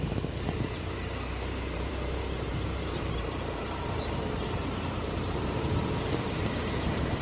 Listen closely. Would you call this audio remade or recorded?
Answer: remade